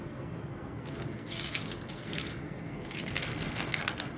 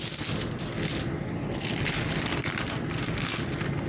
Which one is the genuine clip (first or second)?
second